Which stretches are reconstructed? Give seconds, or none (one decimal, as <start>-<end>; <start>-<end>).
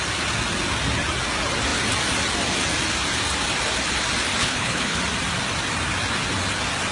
4.4-5.0